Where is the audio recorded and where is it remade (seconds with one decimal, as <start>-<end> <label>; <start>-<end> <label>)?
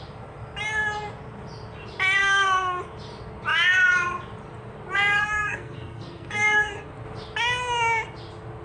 0.0-2.2 recorded; 2.2-2.8 remade; 2.8-5.2 recorded; 5.2-6.7 remade; 6.7-8.6 recorded